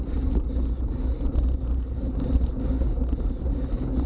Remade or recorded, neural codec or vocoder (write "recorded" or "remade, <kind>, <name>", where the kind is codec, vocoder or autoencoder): recorded